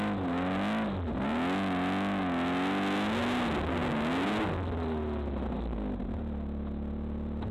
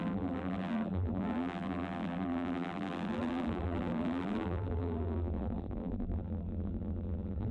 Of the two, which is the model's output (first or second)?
second